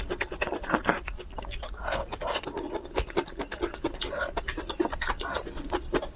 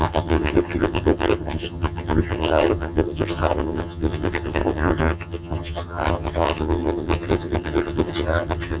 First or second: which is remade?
second